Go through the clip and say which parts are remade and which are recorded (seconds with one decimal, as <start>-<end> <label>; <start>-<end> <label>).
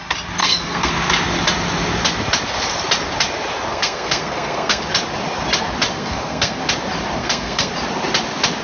0.0-0.4 recorded; 0.4-0.9 remade; 0.9-3.7 recorded; 3.7-4.8 remade; 4.8-5.9 recorded; 5.9-6.6 remade; 6.6-7.2 recorded; 7.2-7.7 remade; 7.7-8.6 recorded